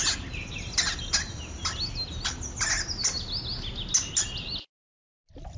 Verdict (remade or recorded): recorded